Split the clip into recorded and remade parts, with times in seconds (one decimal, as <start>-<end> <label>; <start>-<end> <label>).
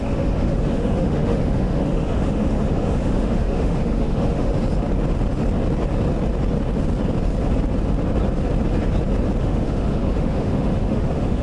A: 0.0-4.5 remade; 4.5-9.4 recorded; 9.4-11.4 remade